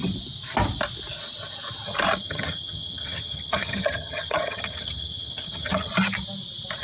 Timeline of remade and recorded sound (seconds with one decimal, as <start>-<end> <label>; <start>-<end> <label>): 0.0-2.2 recorded; 2.2-5.9 remade; 5.9-6.8 recorded